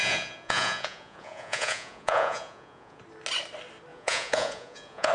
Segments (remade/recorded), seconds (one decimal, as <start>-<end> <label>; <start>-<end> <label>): 0.0-3.0 remade; 3.0-3.9 recorded; 3.9-5.1 remade